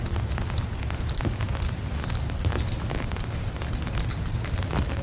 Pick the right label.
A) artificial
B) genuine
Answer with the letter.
A